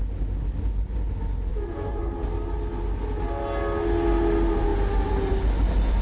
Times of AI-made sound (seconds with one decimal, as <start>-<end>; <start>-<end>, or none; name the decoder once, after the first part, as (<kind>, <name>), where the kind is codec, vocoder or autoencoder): 1.5-2.0 (vocoder, Vocos)